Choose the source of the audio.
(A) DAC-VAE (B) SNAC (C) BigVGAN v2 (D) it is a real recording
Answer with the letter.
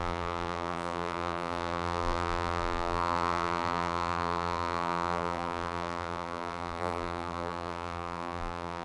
C